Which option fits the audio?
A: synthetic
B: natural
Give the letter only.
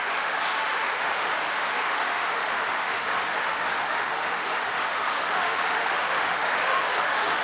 A